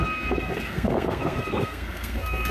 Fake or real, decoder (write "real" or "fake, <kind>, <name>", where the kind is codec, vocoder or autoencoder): fake, codec, SNAC